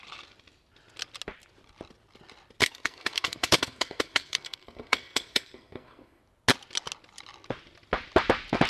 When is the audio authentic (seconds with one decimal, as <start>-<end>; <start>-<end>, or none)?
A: 0.0-2.6; 6.2-8.7